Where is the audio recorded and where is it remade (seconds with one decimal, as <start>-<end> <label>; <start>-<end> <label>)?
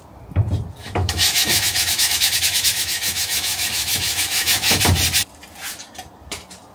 0.0-0.8 recorded; 0.8-4.8 remade; 4.8-6.7 recorded